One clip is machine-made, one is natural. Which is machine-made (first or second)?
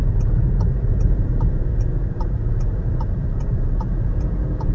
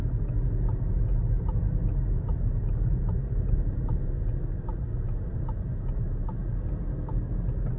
first